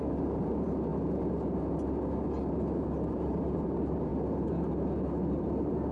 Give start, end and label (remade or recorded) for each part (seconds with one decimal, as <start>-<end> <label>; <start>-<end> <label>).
0.0-0.9 remade; 0.9-3.1 recorded; 3.1-4.1 remade; 4.1-5.4 recorded; 5.4-5.9 remade